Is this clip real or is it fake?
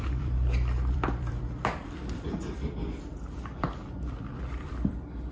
fake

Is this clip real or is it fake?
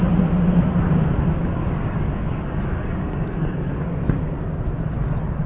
real